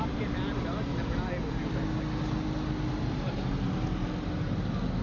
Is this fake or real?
real